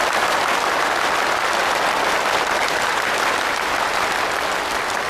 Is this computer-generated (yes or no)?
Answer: no